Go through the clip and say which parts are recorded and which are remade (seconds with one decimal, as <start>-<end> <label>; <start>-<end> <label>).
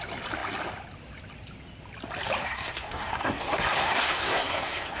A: 0.0-2.4 recorded; 2.4-5.0 remade